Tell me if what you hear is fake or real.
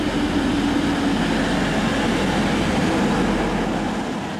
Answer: real